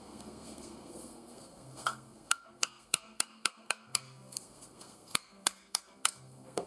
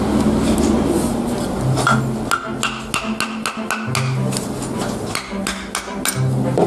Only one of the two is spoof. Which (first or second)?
first